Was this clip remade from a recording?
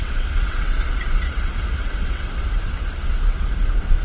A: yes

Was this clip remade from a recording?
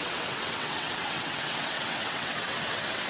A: yes